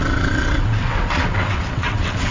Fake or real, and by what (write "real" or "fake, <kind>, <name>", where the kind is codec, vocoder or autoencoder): fake, vocoder, WaveNeXt